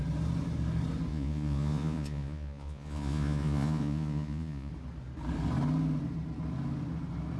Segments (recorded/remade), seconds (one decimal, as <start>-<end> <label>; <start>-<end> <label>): 0.0-1.1 recorded; 1.1-4.7 remade; 4.7-7.4 recorded